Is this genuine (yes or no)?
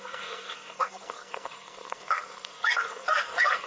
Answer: no